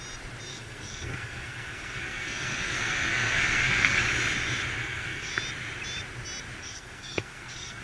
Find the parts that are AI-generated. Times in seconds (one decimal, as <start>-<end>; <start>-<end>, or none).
0.5-4.0; 4.8-5.3; 6.6-7.8